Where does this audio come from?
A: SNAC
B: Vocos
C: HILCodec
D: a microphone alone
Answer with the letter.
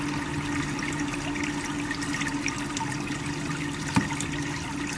D